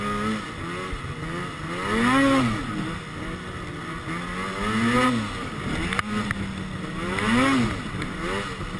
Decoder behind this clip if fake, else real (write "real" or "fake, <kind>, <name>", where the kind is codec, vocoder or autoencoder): real